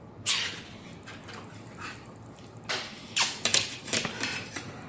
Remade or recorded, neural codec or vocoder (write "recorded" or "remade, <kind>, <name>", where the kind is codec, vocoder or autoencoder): recorded